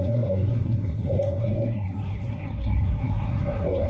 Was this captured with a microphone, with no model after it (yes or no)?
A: no